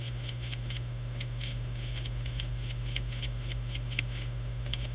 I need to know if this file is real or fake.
fake